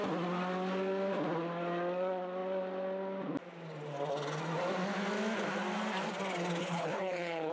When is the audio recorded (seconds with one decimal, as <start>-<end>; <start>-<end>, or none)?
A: 0.0-6.6